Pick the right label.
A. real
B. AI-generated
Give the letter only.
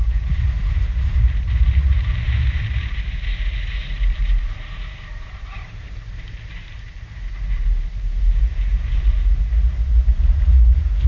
B